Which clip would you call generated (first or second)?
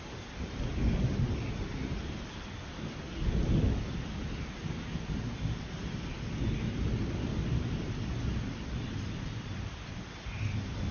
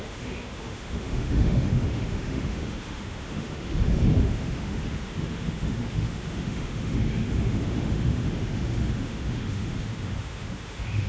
second